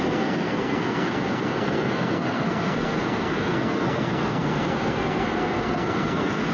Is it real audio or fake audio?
fake